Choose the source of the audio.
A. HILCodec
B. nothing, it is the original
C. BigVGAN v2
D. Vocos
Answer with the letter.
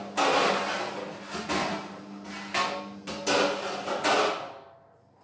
B